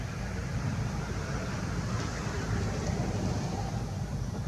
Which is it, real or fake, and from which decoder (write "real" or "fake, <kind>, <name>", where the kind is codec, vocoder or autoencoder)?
real